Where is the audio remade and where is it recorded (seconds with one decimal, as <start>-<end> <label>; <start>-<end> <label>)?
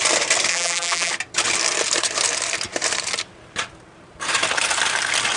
0.0-0.5 recorded; 0.5-1.1 remade; 1.1-5.4 recorded